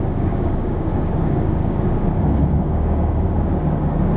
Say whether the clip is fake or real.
fake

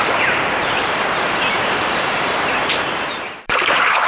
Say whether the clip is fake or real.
fake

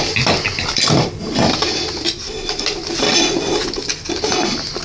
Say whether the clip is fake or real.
real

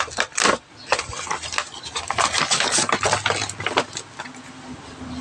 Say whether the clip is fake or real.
real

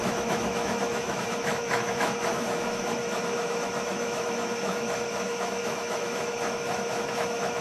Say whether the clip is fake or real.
fake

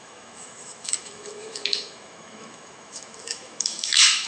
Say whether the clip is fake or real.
fake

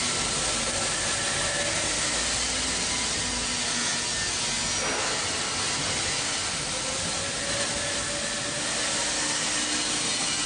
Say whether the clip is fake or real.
real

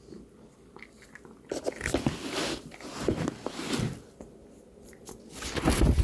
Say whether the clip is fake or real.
real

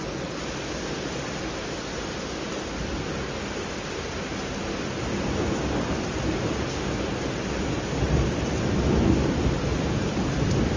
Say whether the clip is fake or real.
real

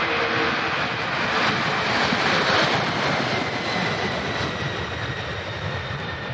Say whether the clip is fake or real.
real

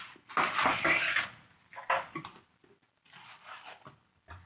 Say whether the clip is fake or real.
real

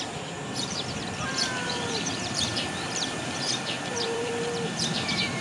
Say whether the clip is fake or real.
fake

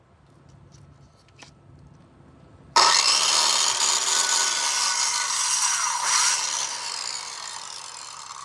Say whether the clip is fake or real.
real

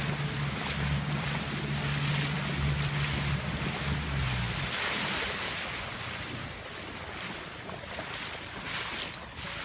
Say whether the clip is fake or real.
real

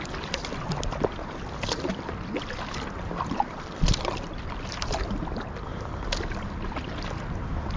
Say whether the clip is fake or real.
real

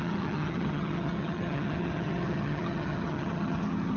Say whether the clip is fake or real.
fake